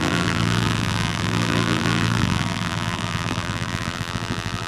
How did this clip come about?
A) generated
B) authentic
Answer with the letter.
A